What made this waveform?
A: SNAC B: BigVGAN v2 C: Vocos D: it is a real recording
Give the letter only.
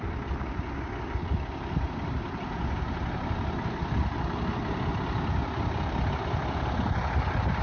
D